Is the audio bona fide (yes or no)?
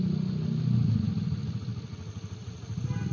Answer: yes